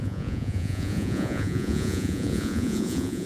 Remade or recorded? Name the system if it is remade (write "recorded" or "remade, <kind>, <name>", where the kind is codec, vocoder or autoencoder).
remade, vocoder, Vocos